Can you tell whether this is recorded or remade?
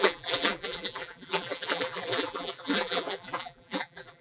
remade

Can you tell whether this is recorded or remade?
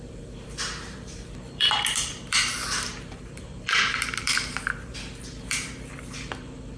remade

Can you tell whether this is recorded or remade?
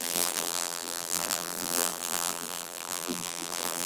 remade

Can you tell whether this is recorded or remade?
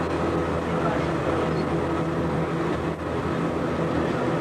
recorded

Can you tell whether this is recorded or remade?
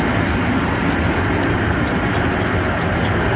recorded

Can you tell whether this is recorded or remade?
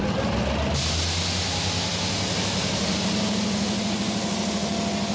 recorded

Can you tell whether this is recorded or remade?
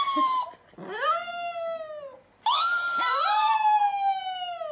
recorded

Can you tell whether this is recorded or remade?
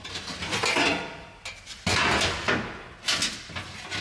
recorded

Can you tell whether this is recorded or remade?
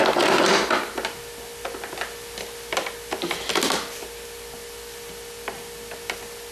recorded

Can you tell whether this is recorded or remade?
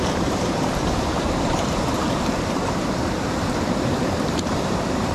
remade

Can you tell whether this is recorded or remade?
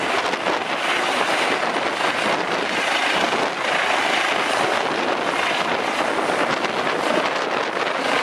recorded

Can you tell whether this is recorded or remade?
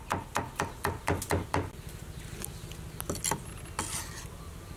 recorded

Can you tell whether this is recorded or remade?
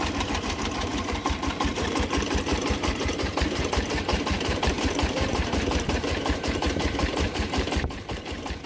remade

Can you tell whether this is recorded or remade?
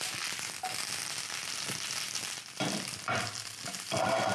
remade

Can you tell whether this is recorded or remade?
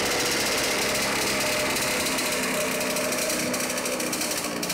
recorded